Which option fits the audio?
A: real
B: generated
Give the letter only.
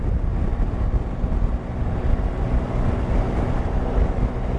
A